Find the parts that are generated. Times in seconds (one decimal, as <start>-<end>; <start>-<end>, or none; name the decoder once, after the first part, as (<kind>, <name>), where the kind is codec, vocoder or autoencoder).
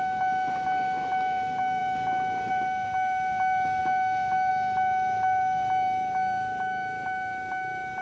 none